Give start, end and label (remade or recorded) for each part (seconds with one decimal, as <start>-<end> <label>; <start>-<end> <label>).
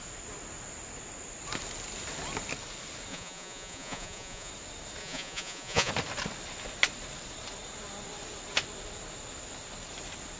0.0-3.1 recorded; 3.1-4.5 remade; 4.5-5.0 recorded; 5.0-5.9 remade; 5.9-10.4 recorded